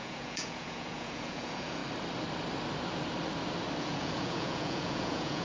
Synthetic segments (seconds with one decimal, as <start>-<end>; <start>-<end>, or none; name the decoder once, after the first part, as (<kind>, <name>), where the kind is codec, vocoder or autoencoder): 0.0-1.8 (vocoder, Vocos); 3.8-5.4

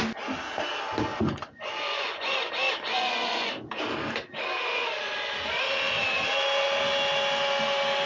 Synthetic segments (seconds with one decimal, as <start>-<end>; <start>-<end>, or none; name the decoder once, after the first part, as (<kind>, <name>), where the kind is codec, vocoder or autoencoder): 1.1-2.5 (vocoder, Vocos); 2.9-3.5

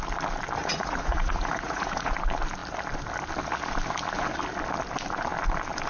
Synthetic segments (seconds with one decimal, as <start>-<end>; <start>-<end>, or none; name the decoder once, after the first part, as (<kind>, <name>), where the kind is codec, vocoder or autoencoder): 0.6-2.1 (vocoder, Vocos)